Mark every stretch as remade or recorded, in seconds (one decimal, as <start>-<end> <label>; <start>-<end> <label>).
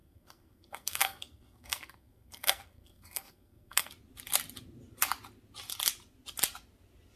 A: 0.0-3.9 remade; 3.9-7.2 recorded